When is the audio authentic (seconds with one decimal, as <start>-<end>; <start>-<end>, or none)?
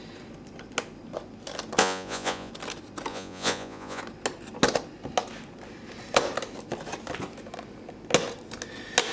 0.0-1.8; 2.5-3.1; 4.0-9.1